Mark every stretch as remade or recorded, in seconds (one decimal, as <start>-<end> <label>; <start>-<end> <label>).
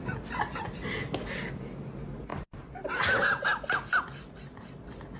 0.0-5.2 recorded